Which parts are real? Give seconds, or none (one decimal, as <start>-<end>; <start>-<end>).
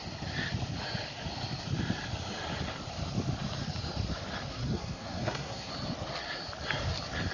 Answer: 0.0-4.5; 5.7-7.3